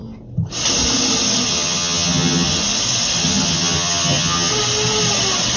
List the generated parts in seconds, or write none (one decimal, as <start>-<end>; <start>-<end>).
1.5-2.6; 3.2-4.5